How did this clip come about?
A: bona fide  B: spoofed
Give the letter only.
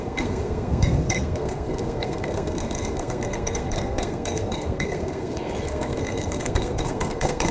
B